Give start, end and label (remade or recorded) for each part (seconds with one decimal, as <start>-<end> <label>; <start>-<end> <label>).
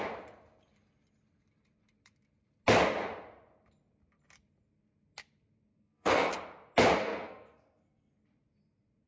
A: 0.0-5.7 recorded; 5.7-6.3 remade; 6.3-7.0 recorded; 7.0-8.1 remade; 8.1-9.1 recorded